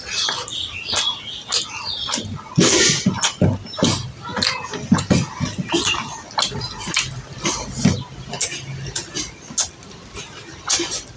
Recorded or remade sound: recorded